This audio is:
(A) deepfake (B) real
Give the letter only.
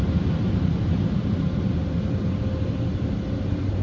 B